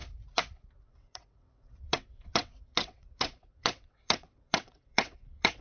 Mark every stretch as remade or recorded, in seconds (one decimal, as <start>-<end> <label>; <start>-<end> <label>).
0.0-0.8 recorded; 0.8-5.6 remade